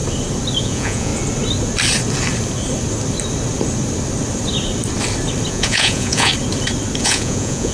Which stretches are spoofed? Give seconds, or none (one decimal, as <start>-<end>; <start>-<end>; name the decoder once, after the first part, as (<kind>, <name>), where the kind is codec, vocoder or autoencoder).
0.6-1.1 (vocoder, Vocos); 5.5-6.3; 7.0-7.7